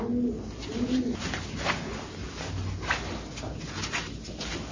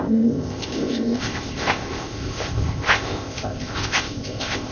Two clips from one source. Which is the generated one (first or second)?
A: second